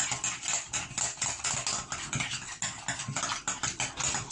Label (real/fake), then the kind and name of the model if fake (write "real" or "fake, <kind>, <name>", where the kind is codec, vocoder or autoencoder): real